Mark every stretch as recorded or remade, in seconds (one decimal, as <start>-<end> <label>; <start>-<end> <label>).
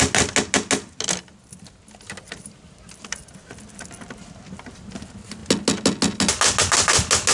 0.0-7.3 recorded